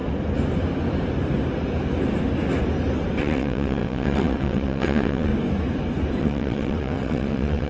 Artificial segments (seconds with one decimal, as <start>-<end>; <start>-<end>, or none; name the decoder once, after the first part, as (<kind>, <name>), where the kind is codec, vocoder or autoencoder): 3.2-5.3 (vocoder, WaveNeXt); 6.2-7.7